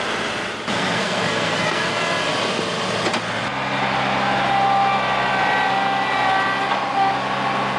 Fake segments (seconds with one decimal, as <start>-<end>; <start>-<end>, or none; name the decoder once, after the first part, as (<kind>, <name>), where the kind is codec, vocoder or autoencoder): 0.7-1.9 (codec, SNAC)